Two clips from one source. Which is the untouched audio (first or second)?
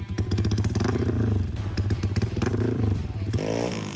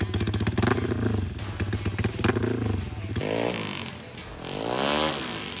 second